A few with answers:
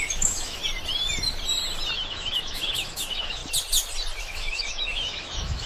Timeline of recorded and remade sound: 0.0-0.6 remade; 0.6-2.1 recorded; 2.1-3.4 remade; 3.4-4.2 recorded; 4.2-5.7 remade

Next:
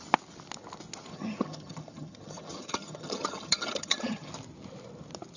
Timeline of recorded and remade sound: 0.0-1.1 recorded; 1.1-4.3 remade; 4.3-5.4 recorded

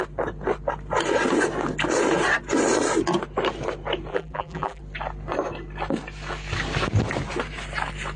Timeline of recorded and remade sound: 0.0-4.1 recorded; 4.1-4.8 remade; 4.8-8.2 recorded